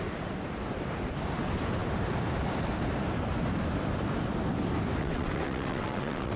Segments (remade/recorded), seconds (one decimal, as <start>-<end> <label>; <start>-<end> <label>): 0.0-5.0 recorded; 5.0-6.4 remade